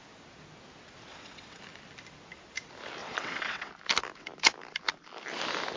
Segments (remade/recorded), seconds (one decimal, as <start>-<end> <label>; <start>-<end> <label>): 0.0-1.1 recorded; 1.1-1.6 remade; 1.6-3.0 recorded; 3.0-3.7 remade; 3.7-5.8 recorded